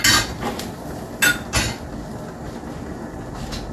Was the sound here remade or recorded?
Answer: recorded